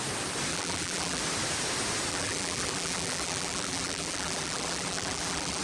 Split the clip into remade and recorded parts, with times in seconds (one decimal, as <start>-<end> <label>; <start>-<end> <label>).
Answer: 0.0-0.5 recorded; 0.5-1.2 remade; 1.2-2.1 recorded; 2.1-5.6 remade